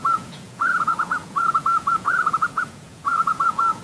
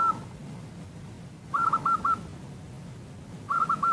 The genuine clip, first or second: second